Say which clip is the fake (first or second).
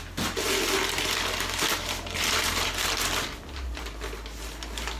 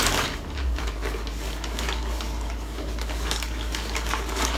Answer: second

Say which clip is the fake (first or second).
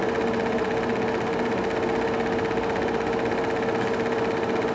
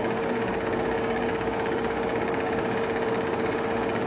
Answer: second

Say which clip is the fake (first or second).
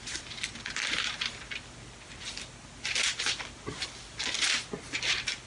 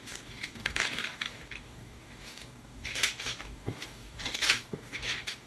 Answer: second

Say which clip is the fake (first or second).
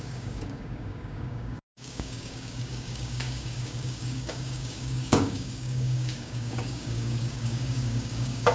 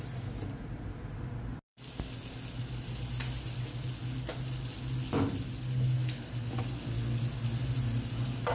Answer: first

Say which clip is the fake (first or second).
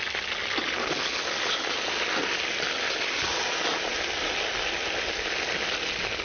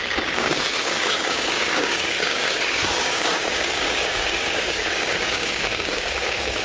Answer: second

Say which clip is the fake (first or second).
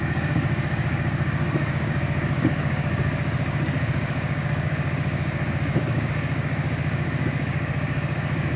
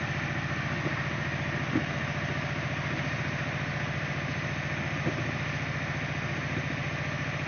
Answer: first